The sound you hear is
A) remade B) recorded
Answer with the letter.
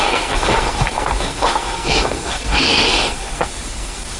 A